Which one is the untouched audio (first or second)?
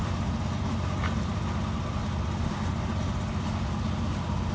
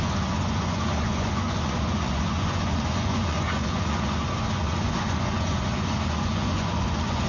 first